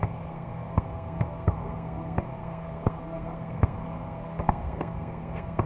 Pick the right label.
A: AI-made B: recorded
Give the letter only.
A